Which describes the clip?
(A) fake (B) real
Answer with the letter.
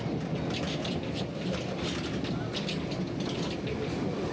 B